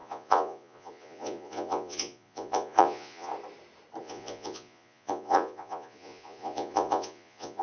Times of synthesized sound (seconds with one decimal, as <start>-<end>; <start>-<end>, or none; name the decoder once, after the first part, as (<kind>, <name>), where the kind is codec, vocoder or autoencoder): 0.0-3.3 (vocoder, Vocos); 4.0-7.6

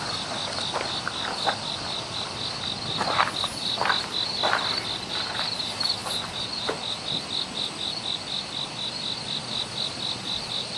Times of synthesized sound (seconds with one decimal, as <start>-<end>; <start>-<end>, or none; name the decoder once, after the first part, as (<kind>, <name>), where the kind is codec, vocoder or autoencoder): none

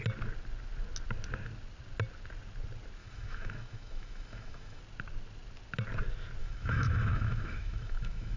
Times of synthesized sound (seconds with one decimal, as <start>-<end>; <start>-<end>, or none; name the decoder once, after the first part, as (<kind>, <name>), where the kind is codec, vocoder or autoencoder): 3.0-4.8 (autoencoder, DAC-VAE); 6.4-8.4